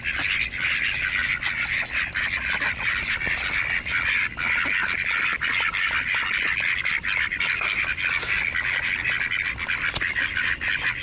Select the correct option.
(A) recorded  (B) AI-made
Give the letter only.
A